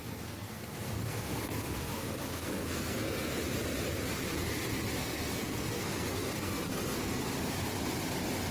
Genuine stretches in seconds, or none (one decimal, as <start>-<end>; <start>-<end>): 3.3-5.0; 7.2-8.5